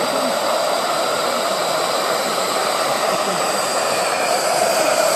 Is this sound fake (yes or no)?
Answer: yes